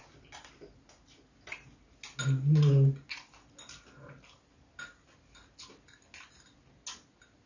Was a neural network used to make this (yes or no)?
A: no